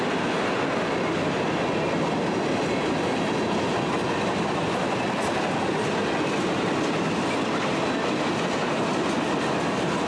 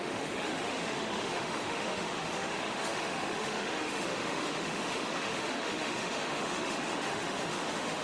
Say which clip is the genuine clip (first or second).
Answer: first